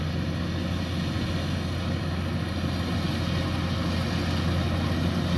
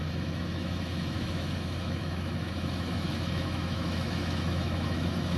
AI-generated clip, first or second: second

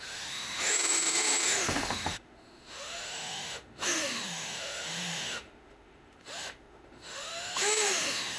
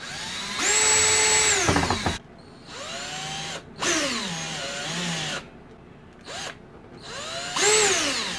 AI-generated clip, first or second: first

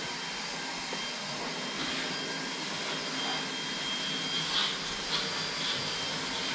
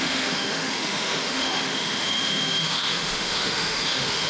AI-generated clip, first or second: second